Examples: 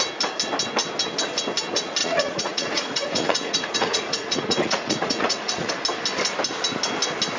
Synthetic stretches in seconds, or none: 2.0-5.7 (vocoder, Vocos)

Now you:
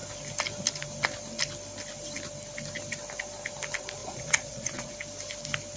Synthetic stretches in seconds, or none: 4.0-4.9 (vocoder, Vocos)

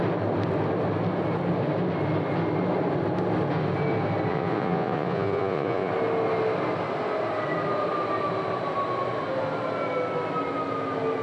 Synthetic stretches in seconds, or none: 4.3-5.9 (vocoder, Vocos)

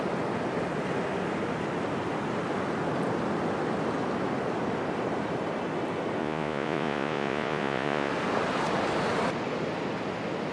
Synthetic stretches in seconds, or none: 6.2-8.1 (vocoder, Vocos)

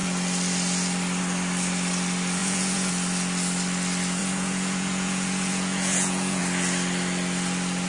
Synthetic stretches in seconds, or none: 2.4-2.9 (vocoder, Vocos); 4.2-6.4

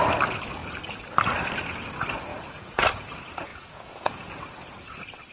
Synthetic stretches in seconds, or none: 2.3-2.8 (vocoder, Vocos); 3.5-4.3